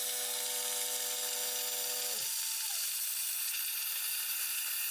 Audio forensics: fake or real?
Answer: real